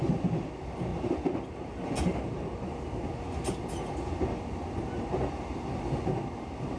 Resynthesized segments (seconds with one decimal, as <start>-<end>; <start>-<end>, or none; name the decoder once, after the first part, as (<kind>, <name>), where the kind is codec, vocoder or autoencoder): none